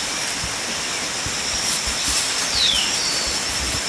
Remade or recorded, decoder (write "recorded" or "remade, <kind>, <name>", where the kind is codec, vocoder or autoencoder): recorded